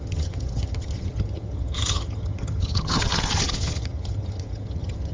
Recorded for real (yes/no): no